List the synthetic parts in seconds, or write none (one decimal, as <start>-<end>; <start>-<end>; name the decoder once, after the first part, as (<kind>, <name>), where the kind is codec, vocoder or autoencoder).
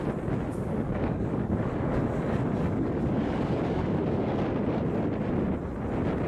0.5-4.3 (codec, DAC)